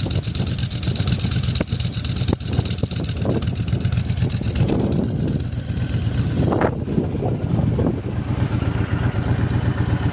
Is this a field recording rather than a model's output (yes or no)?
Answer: yes